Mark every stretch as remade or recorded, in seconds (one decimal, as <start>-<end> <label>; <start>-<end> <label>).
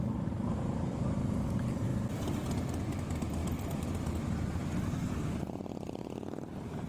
0.0-6.9 recorded